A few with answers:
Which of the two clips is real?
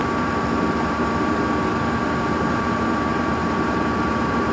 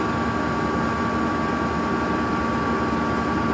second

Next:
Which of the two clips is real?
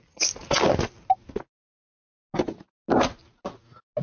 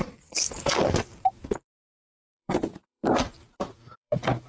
first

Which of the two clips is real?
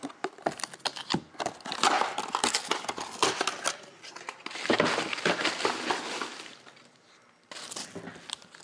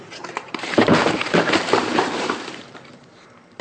first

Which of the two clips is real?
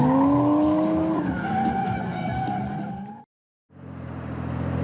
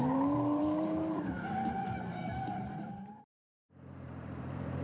first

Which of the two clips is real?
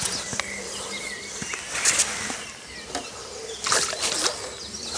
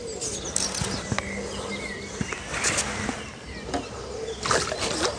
second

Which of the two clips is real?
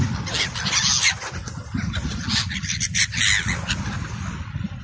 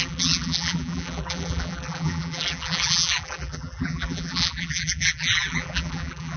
first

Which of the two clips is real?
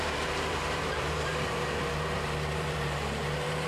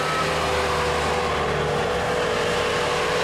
second